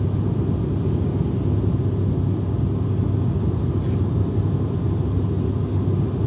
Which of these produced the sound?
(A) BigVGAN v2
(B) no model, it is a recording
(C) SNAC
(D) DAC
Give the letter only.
B